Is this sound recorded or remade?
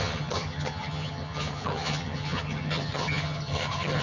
remade